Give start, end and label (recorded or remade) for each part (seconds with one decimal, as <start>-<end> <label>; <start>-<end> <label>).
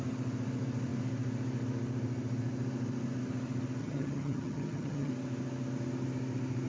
0.0-3.8 recorded; 3.8-5.1 remade; 5.1-6.7 recorded